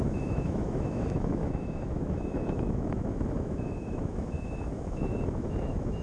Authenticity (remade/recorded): remade